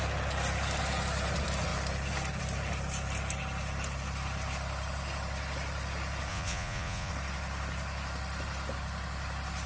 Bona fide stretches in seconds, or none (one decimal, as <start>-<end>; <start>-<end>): 0.0-6.3; 7.1-9.7